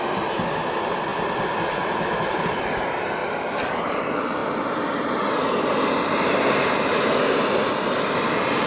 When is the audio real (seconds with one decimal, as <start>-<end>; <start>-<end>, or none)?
0.0-3.2; 4.0-8.7